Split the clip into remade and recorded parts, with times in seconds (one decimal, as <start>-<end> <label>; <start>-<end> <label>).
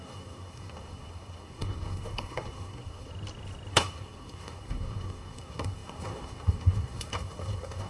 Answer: 0.0-3.1 remade; 3.1-3.7 recorded; 3.7-7.9 remade